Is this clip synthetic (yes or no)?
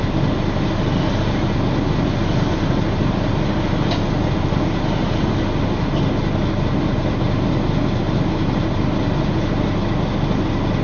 no